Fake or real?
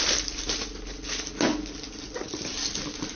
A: real